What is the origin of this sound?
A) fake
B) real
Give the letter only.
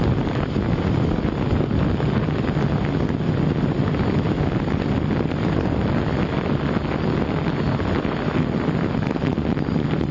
B